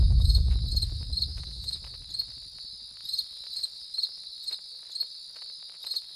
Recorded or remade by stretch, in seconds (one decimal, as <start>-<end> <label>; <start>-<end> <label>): 0.0-0.5 remade; 0.5-1.3 recorded; 1.3-1.8 remade; 1.8-6.2 recorded